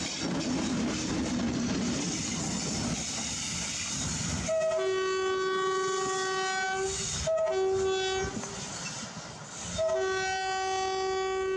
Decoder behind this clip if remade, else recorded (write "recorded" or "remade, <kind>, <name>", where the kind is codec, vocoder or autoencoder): recorded